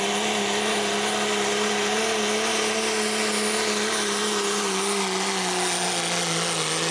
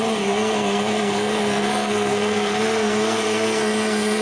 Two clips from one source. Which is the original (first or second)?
first